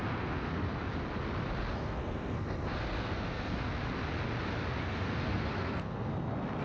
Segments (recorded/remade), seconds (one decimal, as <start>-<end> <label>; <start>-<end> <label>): 0.0-0.7 remade; 0.7-1.8 recorded; 1.8-3.8 remade; 3.8-4.8 recorded; 4.8-6.1 remade; 6.1-6.6 recorded